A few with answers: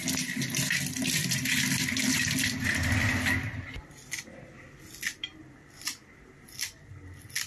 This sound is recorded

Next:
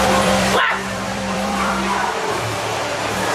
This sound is remade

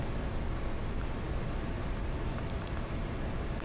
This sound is recorded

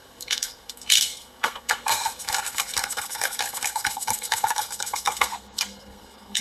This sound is remade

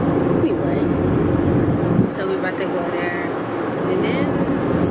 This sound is recorded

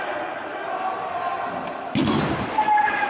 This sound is recorded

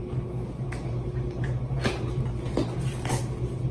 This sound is recorded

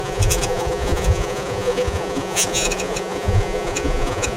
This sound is remade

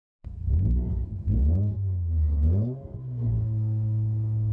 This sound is remade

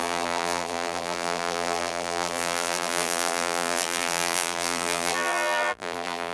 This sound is remade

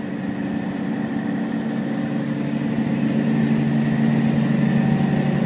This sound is recorded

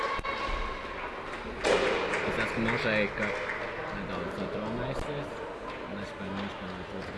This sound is recorded